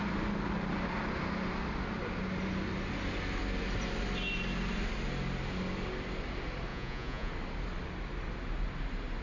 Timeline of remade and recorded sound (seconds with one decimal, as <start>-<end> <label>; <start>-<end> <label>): 0.0-6.7 recorded; 6.7-7.3 remade; 7.3-9.2 recorded